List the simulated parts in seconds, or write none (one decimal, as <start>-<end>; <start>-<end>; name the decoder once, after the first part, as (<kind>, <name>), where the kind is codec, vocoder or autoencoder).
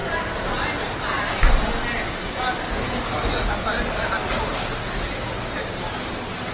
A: none